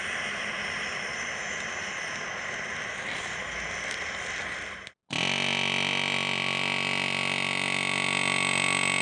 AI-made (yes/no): no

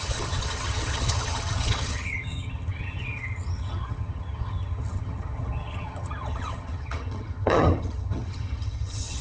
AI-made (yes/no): yes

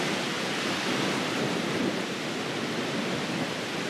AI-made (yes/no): no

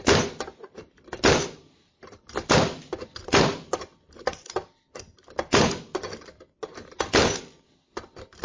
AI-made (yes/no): no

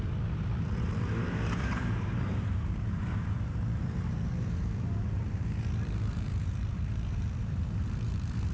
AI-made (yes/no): yes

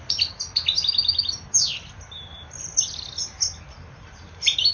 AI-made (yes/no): no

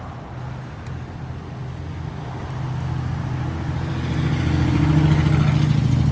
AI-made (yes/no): no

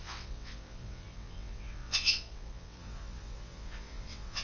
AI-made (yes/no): yes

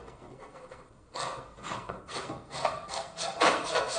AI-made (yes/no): yes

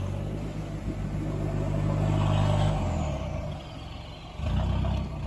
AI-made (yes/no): no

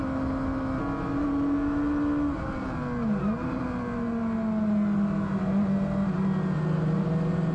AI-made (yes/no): no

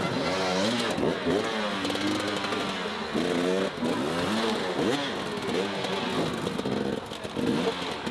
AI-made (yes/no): no